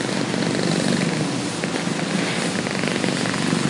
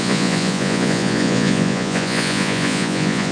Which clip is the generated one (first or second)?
second